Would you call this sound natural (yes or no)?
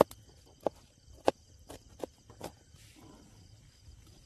yes